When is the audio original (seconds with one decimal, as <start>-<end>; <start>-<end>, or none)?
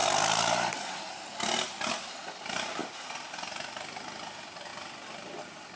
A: 0.7-4.7